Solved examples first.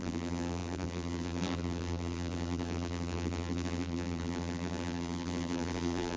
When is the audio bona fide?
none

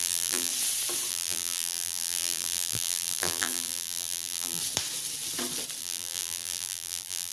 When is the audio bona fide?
0.5-1.1; 4.6-5.8

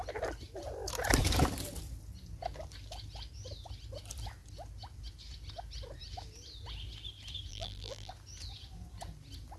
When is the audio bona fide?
0.0-7.5; 8.1-9.6

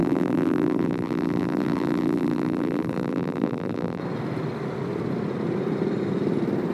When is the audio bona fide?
4.0-6.7

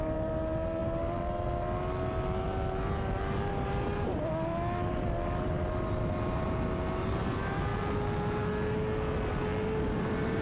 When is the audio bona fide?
7.7-9.8

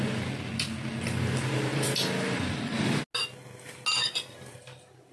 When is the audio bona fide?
0.0-1.7; 3.0-5.1

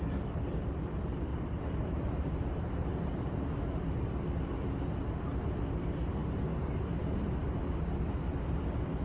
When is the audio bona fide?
0.0-1.3; 3.5-6.2; 7.6-9.0

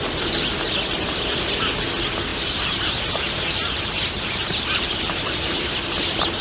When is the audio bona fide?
0.0-2.3; 5.8-6.4